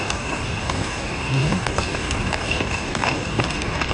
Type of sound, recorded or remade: remade